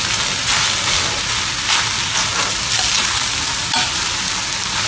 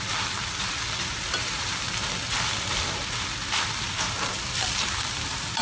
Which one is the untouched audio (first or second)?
first